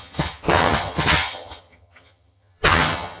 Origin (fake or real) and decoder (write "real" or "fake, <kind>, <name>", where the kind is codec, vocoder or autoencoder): fake, vocoder, HiFi-GAN